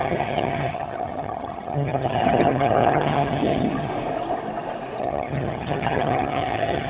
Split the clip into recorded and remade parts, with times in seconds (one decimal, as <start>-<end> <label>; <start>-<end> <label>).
0.0-3.9 remade; 3.9-5.0 recorded; 5.0-6.9 remade